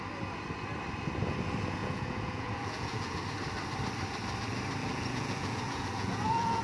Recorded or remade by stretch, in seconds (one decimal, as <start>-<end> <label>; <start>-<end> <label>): 0.0-1.8 recorded; 1.8-3.2 remade; 3.2-4.8 recorded; 4.8-6.6 remade